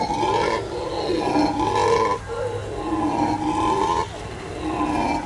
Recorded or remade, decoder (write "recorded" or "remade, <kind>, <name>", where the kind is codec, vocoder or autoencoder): recorded